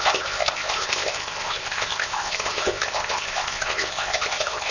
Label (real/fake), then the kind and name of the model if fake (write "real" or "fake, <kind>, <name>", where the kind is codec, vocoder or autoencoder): fake, codec, ZipCodec